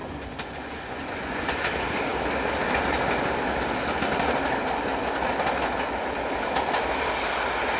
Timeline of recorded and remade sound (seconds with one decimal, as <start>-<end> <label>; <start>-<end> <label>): 0.0-1.6 remade; 1.6-7.8 recorded